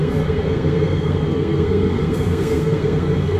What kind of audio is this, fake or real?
fake